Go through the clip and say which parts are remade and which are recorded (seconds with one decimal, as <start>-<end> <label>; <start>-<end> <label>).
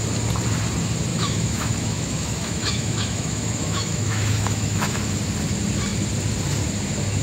0.0-1.1 recorded; 1.1-5.0 remade; 5.0-7.2 recorded